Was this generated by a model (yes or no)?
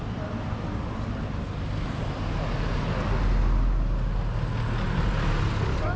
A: no